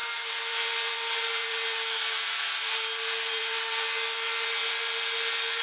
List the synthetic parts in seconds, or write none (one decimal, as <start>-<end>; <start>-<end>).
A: none